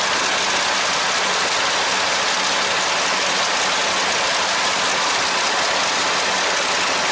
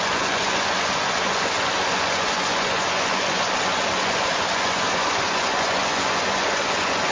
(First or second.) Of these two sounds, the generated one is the second